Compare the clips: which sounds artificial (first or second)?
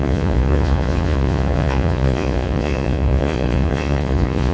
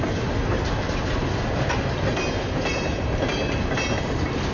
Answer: first